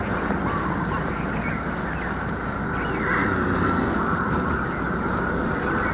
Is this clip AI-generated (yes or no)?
no